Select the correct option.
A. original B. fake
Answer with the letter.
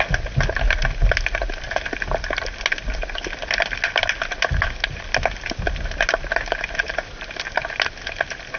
A